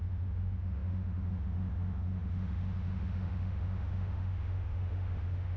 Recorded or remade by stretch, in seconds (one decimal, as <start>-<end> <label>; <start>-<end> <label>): 0.0-5.6 remade